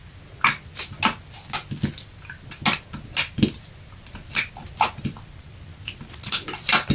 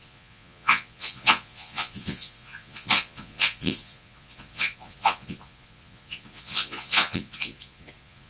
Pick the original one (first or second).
first